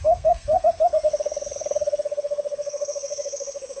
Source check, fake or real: fake